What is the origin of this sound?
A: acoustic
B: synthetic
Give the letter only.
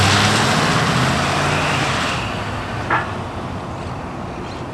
A